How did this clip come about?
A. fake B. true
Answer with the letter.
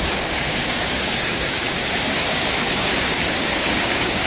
A